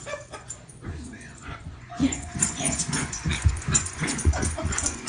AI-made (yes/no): yes